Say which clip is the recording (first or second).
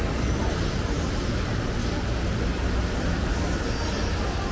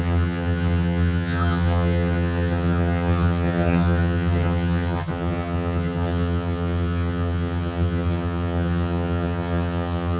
first